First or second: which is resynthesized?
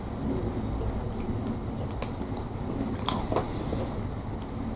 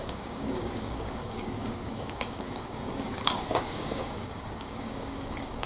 second